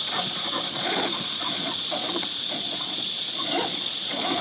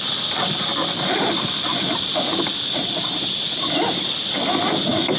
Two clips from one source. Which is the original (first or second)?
second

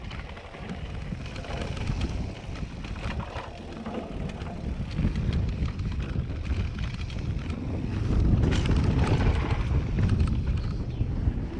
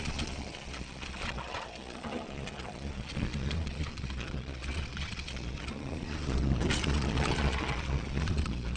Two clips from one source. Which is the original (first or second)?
first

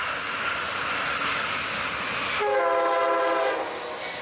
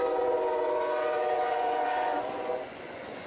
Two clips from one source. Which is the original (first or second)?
first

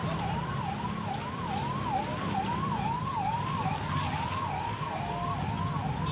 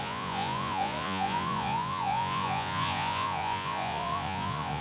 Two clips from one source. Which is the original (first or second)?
first